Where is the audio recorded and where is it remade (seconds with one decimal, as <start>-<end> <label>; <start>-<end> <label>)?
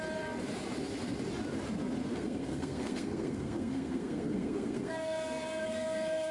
0.0-2.1 recorded; 2.1-6.3 remade